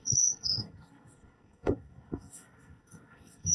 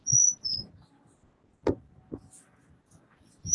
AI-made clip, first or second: first